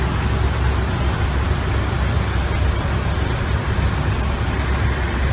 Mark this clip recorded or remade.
recorded